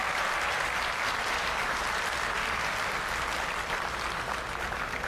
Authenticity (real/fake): real